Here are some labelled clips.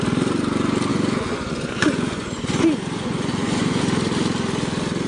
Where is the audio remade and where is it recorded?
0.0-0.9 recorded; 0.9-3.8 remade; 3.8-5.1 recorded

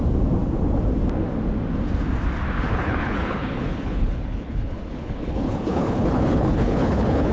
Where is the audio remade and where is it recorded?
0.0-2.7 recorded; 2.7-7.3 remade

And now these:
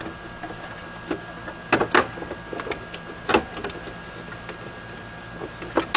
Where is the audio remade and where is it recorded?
0.0-6.0 recorded

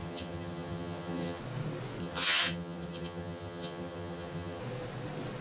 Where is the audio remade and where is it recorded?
0.0-1.4 remade; 1.4-2.0 recorded; 2.0-4.6 remade; 4.6-5.4 recorded